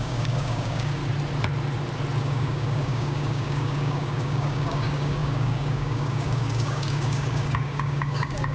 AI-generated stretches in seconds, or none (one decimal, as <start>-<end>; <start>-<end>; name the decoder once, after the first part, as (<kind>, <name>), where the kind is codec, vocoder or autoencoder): 0.0-1.0 (codec, DAC); 2.2-8.5